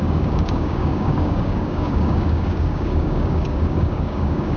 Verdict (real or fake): fake